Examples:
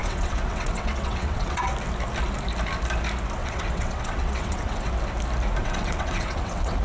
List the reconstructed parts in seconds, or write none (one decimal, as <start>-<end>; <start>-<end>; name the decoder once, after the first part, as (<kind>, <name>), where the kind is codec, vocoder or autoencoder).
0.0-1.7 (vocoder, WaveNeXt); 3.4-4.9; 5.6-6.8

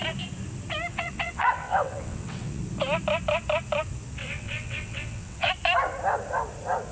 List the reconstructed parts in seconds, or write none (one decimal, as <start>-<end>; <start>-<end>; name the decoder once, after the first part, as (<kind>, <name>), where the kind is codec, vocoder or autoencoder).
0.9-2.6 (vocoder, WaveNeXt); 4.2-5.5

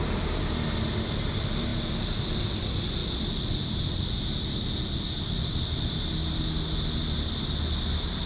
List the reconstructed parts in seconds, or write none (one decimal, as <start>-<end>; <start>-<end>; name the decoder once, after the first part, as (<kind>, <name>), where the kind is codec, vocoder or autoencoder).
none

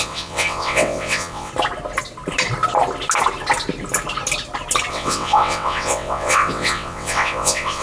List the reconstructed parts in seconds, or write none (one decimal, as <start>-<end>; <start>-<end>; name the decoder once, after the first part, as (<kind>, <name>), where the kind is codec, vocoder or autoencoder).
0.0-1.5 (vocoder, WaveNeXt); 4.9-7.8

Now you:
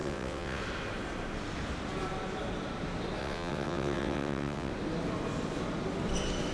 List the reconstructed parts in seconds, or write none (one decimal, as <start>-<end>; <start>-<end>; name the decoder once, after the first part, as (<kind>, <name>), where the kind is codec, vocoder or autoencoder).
0.0-0.6 (vocoder, WaveNeXt); 3.2-4.7

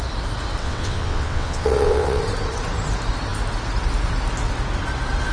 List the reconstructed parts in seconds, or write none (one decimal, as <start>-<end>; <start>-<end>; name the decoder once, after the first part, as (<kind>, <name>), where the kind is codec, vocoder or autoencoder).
0.6-2.2 (vocoder, WaveNeXt)

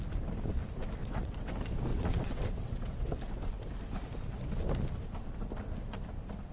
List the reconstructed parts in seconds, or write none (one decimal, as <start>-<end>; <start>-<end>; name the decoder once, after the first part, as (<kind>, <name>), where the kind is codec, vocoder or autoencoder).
1.0-1.5 (vocoder, WaveNeXt); 1.9-3.2